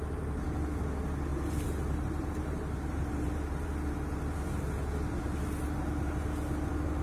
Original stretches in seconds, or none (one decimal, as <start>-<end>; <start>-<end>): 0.0-1.3; 3.7-7.0

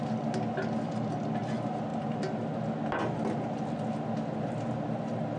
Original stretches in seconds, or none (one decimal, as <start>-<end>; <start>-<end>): 0.0-5.4

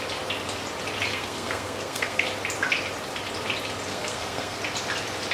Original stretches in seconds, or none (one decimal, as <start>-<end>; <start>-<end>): 0.0-1.1; 2.2-3.9; 4.6-5.3

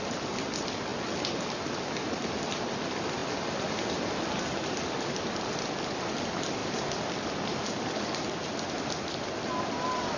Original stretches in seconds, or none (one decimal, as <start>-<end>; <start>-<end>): 0.0-0.9; 1.7-6.6; 9.2-10.2

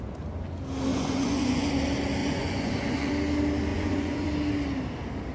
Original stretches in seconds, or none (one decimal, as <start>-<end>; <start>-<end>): 0.0-0.9; 1.7-2.2; 3.1-3.7; 4.3-5.3

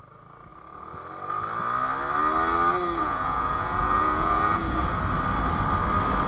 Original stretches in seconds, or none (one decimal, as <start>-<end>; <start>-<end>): 0.0-3.0; 5.0-6.3